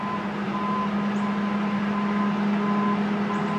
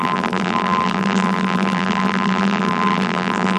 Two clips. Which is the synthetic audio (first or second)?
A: second